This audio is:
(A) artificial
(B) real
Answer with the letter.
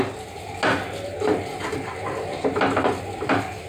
B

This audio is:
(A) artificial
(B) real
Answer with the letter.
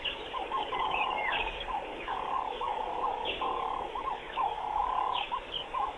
A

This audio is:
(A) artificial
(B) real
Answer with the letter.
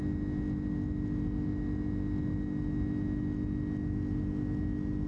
B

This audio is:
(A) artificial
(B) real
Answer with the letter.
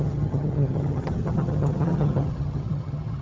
A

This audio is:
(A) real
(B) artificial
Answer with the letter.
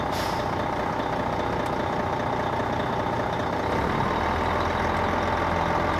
A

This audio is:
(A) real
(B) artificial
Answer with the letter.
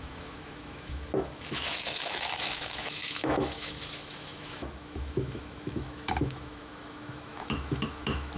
B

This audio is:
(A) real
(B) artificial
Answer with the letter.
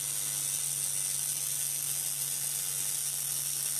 A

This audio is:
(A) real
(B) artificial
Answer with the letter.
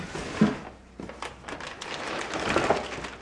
A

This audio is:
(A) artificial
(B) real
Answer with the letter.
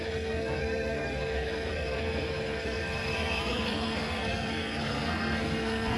A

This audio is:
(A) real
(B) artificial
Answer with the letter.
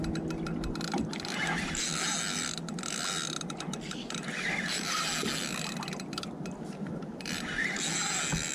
A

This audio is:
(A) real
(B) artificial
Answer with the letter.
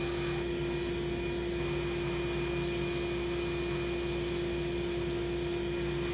A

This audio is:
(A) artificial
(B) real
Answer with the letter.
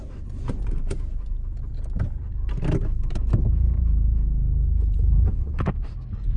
A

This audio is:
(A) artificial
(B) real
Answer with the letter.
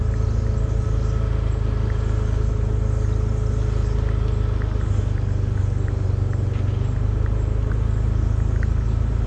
B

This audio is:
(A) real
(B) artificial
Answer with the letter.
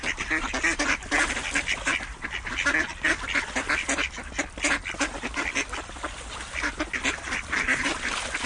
A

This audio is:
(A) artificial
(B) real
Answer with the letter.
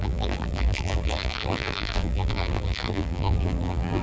A